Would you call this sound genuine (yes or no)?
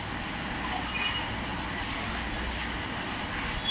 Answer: yes